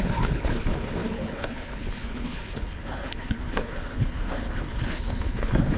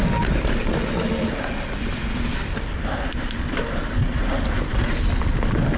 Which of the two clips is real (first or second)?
second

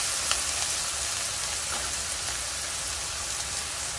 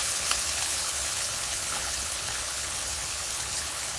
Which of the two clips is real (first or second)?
first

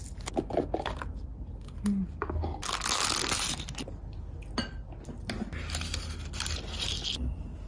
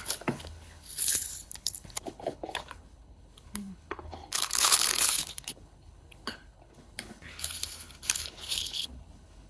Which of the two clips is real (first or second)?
first